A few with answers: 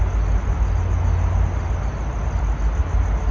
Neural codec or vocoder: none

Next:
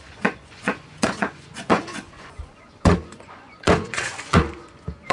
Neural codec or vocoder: vocoder, Vocos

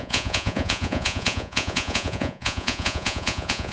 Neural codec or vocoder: vocoder, Vocos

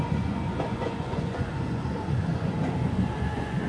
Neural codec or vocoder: vocoder, Vocos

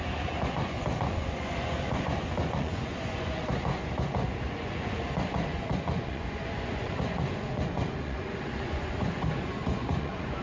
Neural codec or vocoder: vocoder, Vocos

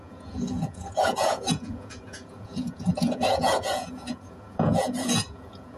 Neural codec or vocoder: vocoder, Vocos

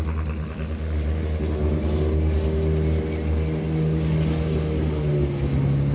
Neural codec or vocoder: none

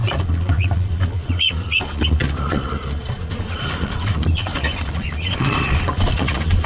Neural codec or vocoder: vocoder, Vocos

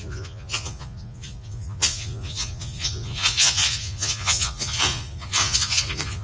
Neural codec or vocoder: vocoder, Vocos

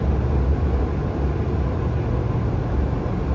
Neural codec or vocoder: none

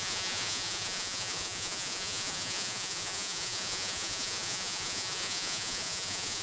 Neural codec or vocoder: vocoder, Vocos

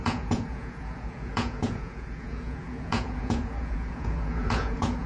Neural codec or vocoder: vocoder, Vocos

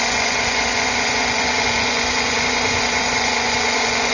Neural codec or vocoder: vocoder, Vocos